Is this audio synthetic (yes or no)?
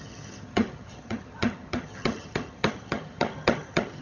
yes